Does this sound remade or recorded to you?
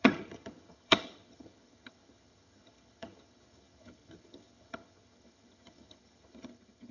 remade